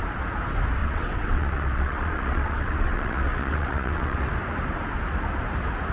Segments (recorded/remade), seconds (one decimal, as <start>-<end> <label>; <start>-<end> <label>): 0.0-0.8 recorded; 0.8-4.3 remade; 4.3-5.9 recorded